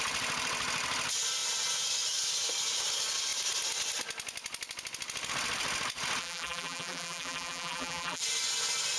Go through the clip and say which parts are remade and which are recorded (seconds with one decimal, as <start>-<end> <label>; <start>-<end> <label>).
0.0-6.2 recorded; 6.2-8.2 remade; 8.2-9.0 recorded